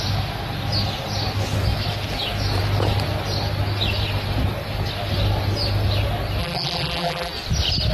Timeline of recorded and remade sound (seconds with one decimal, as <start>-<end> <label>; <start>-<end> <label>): 0.0-6.4 recorded; 6.4-7.3 remade; 7.3-7.9 recorded